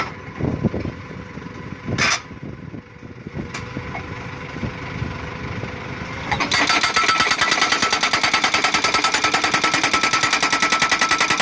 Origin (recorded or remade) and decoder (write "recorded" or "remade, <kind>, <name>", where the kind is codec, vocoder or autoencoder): recorded